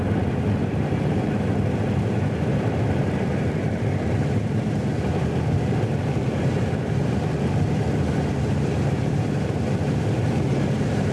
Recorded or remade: remade